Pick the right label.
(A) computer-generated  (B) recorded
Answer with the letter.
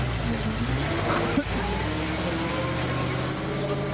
B